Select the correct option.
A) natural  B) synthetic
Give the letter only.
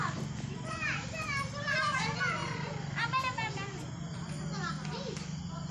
A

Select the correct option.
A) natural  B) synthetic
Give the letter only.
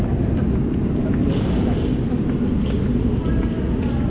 A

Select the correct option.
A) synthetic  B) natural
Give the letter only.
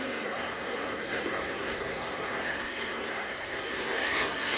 A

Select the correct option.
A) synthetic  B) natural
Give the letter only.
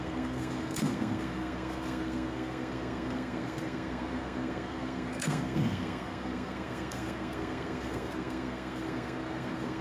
A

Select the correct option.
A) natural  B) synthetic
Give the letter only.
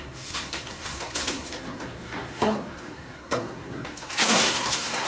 B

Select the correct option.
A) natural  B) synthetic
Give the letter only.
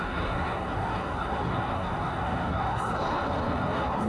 B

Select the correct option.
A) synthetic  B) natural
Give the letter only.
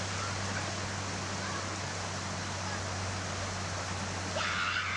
B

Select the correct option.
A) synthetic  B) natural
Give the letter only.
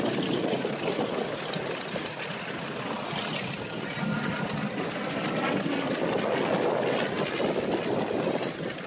B